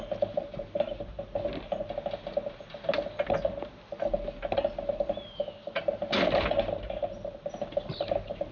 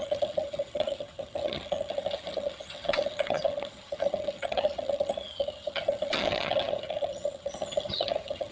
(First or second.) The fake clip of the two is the second